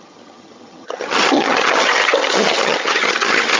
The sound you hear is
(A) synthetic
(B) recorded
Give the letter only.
A